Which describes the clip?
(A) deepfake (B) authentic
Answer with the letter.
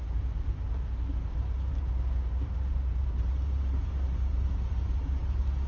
A